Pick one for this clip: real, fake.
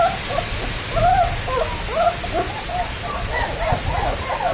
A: real